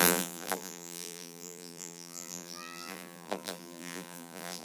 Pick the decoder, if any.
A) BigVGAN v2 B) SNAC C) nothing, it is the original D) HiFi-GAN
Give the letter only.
A